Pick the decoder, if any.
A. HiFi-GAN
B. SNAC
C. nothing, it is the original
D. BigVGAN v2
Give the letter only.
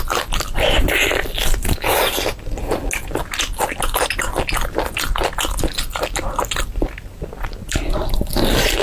C